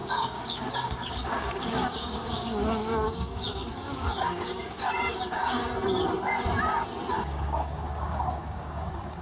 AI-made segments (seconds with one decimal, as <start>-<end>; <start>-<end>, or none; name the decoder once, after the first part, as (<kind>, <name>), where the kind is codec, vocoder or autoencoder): 0.0-5.6 (codec, DAC); 7.1-9.2